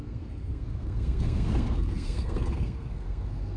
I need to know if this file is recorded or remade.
remade